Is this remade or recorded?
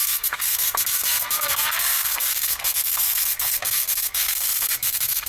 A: remade